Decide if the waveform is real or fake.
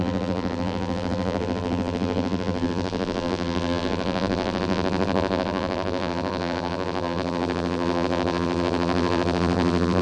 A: fake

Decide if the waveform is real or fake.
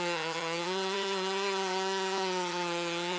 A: fake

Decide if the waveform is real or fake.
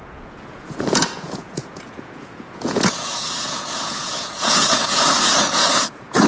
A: fake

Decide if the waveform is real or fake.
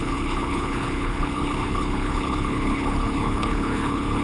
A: fake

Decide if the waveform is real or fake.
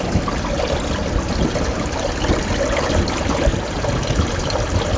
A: real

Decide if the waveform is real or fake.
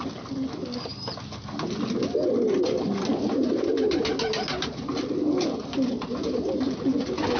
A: real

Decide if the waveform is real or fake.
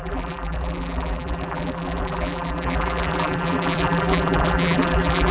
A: fake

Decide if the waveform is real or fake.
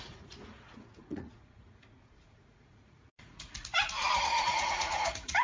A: fake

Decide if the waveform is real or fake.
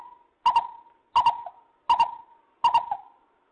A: real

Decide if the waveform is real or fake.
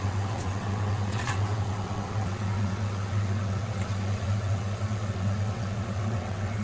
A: fake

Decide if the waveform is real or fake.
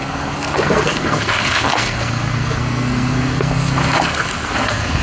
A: fake